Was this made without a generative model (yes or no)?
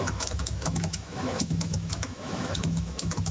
no